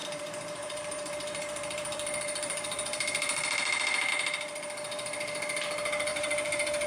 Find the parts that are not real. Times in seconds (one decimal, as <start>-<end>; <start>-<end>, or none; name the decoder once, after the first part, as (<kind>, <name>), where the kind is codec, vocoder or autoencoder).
0.0-4.1 (vocoder, BigVGAN v2); 6.1-6.9